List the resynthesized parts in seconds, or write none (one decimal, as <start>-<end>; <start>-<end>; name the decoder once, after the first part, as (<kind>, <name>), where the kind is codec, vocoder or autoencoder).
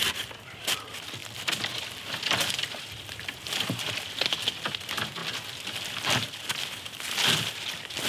none